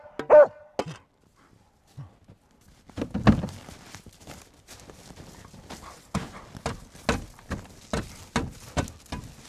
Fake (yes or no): no